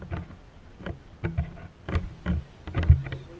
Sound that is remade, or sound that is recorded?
recorded